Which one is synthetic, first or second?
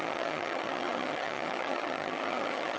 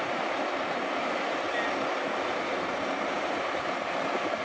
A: first